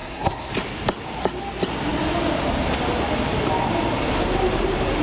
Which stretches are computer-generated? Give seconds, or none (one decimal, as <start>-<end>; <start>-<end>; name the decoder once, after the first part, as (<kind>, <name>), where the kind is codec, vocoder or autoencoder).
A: 0.0-0.5 (codec, SNAC)